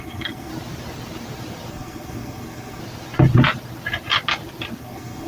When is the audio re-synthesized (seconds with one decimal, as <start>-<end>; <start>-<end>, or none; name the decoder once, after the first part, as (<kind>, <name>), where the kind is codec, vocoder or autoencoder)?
0.0-0.5 (codec, SNAC); 1.7-2.8; 4.8-5.3